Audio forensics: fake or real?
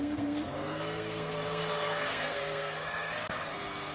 fake